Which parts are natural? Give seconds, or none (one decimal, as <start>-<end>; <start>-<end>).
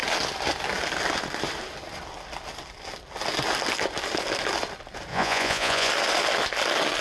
0.0-5.1; 5.9-7.0